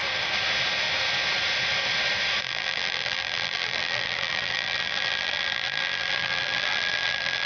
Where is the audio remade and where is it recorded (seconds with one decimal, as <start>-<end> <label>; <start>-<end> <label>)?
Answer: 0.0-2.4 recorded; 2.4-7.5 remade